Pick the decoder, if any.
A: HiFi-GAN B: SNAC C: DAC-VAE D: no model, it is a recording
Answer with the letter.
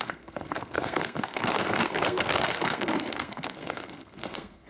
B